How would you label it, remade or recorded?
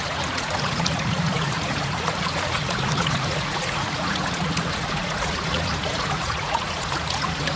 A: remade